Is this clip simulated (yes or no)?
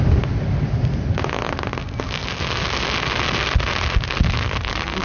no